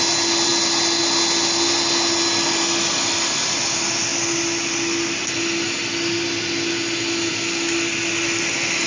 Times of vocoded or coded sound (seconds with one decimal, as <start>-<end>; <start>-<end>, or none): none